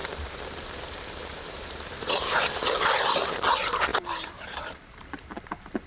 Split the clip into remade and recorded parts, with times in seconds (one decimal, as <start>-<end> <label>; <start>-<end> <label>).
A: 0.0-2.4 remade; 2.4-3.9 recorded; 3.9-5.5 remade; 5.5-5.9 recorded